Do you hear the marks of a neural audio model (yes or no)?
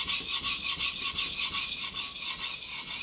no